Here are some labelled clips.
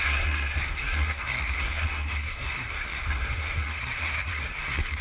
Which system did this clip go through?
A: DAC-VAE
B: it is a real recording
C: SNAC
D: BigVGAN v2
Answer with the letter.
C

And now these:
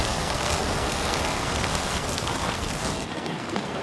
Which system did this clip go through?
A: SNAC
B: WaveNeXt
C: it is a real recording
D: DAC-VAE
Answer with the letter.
A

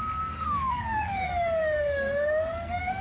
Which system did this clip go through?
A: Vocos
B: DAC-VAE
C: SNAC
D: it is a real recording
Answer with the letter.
C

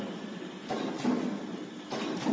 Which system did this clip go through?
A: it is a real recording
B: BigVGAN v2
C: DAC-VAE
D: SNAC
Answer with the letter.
A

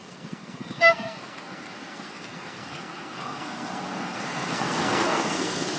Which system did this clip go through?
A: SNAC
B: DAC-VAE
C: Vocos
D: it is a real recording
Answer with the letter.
A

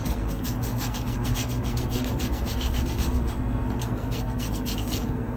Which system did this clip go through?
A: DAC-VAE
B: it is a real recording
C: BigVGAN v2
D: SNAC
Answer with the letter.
D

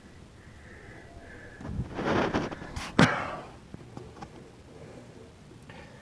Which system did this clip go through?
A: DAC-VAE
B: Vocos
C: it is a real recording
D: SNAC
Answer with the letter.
C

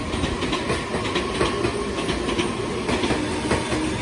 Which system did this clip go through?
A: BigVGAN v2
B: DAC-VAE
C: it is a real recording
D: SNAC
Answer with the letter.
C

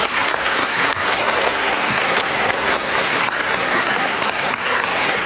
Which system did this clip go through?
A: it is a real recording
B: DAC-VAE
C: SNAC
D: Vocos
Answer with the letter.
C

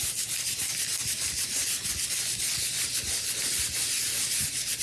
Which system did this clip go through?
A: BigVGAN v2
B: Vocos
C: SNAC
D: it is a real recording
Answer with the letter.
D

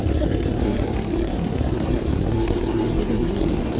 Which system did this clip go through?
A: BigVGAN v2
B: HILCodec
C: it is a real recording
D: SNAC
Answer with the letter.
D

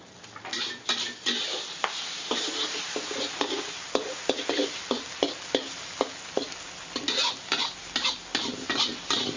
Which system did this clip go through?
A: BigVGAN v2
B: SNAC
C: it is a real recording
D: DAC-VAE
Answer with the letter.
C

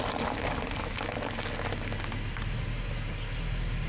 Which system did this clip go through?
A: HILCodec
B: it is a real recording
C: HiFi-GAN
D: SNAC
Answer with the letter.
B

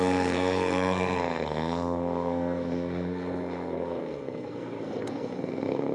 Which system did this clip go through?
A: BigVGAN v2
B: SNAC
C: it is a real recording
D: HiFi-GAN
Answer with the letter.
B